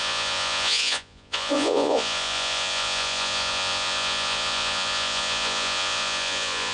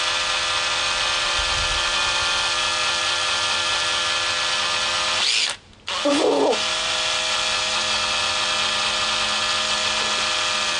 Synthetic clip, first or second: first